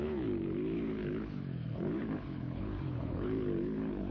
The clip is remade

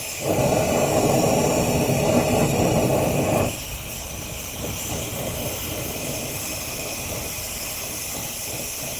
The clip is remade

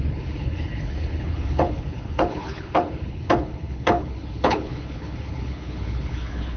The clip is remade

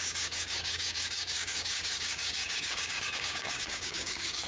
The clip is remade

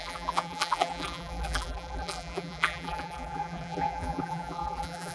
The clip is remade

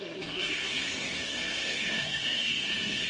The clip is remade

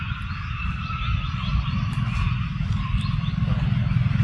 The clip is recorded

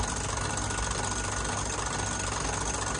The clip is recorded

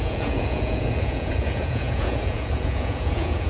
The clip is remade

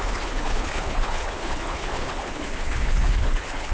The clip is remade